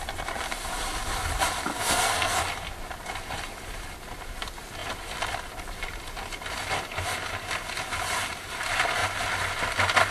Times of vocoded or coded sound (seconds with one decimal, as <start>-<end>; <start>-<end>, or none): 1.7-2.4